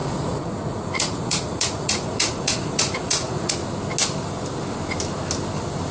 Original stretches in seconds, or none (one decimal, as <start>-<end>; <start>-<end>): 3.5-5.9